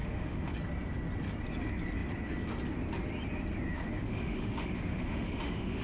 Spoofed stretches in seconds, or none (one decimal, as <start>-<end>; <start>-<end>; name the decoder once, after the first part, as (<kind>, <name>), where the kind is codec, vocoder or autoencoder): 0.0-0.5 (autoencoder, DAC-VAE); 3.7-5.8